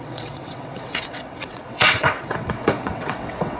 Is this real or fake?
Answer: fake